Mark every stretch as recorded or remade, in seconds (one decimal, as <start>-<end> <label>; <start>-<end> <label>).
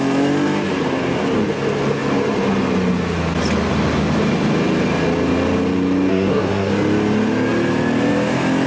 0.0-6.1 recorded; 6.1-6.7 remade; 6.7-8.7 recorded